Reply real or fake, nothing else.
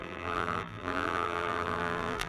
fake